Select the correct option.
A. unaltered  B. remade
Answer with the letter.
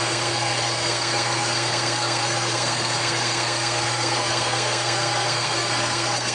B